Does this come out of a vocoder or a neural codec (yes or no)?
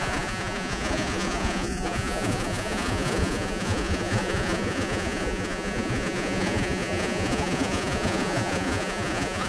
yes